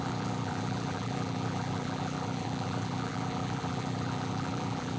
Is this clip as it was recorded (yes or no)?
no